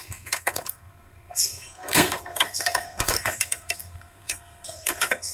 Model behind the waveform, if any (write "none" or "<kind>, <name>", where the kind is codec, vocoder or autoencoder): codec, SNAC